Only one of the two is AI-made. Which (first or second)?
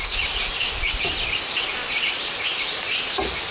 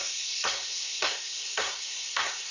second